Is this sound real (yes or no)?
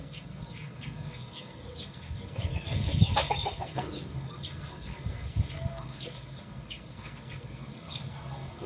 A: no